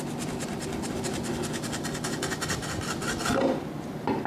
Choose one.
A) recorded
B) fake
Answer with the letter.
A